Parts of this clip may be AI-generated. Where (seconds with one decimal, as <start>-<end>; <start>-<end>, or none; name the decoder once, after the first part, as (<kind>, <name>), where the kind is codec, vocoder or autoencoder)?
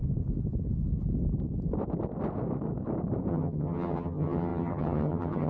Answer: 3.3-5.5 (vocoder, HiFi-GAN)